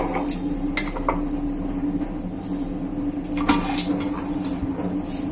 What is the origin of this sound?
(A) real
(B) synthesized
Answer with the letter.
A